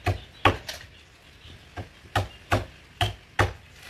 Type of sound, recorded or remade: recorded